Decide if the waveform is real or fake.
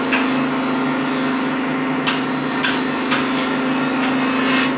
real